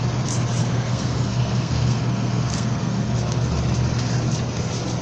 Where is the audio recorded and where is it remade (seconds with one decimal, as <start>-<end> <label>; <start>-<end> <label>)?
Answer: 0.0-0.6 recorded; 0.6-3.5 remade; 3.5-5.0 recorded